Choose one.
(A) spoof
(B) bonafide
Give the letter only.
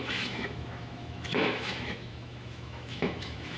A